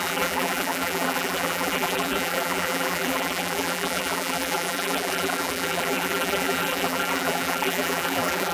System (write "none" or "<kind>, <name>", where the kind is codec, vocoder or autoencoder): vocoder, BigVGAN v2